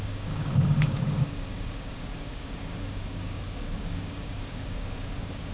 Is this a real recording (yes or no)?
no